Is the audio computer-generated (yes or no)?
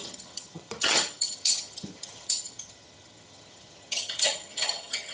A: yes